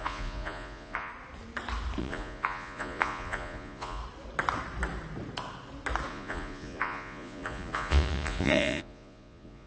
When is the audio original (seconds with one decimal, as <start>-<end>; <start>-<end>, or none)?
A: 1.1-2.0; 4.0-6.1